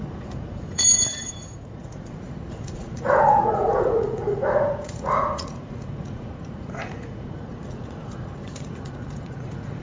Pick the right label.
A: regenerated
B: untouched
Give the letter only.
A